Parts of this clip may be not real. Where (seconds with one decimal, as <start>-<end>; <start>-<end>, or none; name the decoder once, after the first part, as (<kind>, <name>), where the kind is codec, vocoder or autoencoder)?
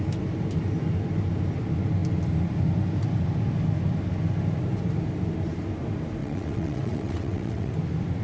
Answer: 6.2-7.7 (vocoder, WaveNeXt)